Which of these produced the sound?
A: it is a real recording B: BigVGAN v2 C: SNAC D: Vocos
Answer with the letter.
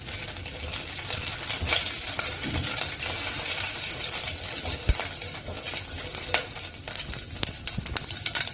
A